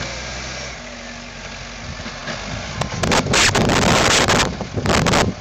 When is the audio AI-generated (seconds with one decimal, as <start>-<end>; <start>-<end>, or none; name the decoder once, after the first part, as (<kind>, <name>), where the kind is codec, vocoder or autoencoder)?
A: 3.7-4.7 (vocoder, BigVGAN v2)